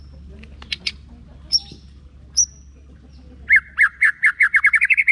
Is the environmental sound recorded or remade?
recorded